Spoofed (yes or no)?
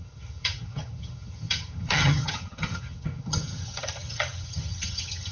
yes